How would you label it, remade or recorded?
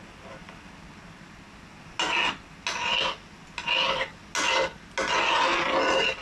recorded